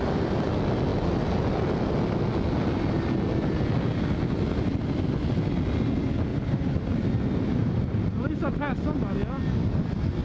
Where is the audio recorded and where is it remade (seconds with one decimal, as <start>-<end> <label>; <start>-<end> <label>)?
0.0-6.3 recorded; 6.3-7.1 remade; 7.1-7.6 recorded; 7.6-8.3 remade; 8.3-10.2 recorded